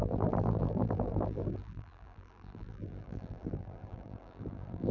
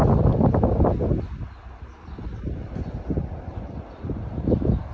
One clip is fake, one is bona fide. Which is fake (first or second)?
first